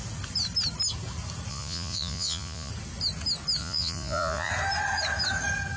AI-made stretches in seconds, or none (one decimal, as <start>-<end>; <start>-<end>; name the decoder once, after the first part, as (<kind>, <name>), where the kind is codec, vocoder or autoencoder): 1.5-2.7 (vocoder, Vocos); 3.6-4.5